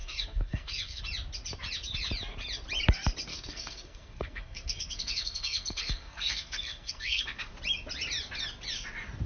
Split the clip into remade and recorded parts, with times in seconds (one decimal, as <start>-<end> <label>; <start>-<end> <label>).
0.0-1.0 remade; 1.0-3.3 recorded; 3.3-7.5 remade; 7.5-9.3 recorded